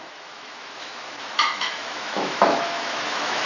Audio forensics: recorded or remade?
remade